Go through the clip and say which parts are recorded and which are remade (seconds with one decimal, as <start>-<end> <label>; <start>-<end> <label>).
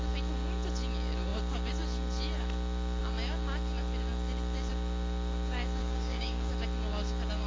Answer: 0.0-5.8 recorded; 5.8-6.5 remade; 6.5-7.5 recorded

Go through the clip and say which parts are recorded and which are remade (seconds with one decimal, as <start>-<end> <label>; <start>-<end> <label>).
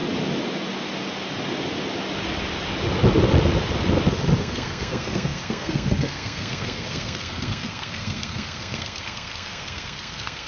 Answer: 0.0-4.4 recorded; 4.4-10.5 remade